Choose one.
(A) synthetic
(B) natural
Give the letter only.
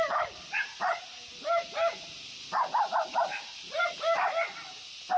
B